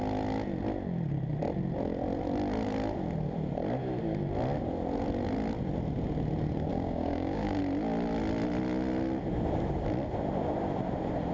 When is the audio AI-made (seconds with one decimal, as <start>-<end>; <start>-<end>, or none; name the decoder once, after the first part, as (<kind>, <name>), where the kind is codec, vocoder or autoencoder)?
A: 6.7-7.6 (codec, DAC)

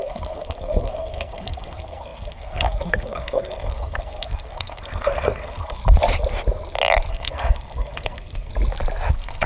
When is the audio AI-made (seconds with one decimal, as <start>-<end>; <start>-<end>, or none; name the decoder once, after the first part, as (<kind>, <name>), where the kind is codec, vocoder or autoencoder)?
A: 0.0-5.8 (codec, SNAC); 7.1-8.5; 9.1-9.5

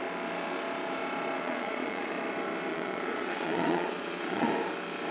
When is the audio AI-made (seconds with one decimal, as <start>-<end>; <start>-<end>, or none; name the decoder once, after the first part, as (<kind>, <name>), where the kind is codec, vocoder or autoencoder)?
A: 1.4-2.1 (vocoder, Vocos); 2.7-4.5

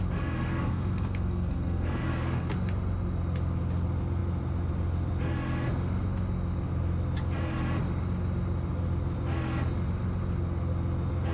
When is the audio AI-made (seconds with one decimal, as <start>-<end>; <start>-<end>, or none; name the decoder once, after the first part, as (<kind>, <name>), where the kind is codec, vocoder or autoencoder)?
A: 0.5-2.5 (codec, SNAC)

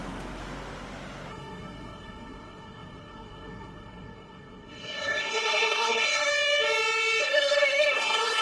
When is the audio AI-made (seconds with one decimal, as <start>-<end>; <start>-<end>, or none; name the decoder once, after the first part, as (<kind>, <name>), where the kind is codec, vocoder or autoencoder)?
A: 1.3-6.3 (codec, SNAC); 7.2-8.4

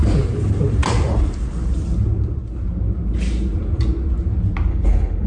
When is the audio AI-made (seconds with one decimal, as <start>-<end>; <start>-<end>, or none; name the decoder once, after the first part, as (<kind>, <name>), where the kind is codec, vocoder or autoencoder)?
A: 4.7-5.3 (codec, HILCodec)